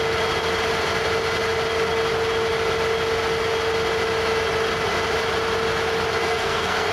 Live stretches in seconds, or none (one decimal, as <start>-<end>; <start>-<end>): 0.0-6.2